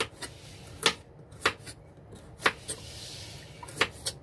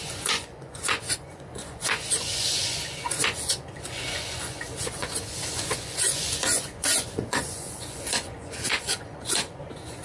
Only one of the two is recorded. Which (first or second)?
first